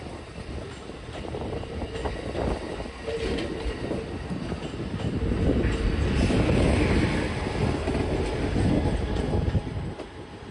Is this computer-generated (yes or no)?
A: no